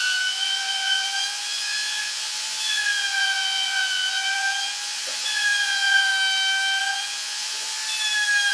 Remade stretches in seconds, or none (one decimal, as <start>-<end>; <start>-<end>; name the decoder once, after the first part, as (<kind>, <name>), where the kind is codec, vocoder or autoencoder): 0.0-6.1 (vocoder, Vocos); 6.8-7.8